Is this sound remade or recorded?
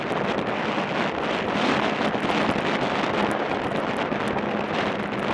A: recorded